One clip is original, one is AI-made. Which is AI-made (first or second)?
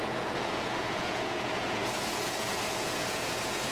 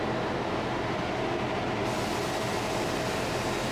first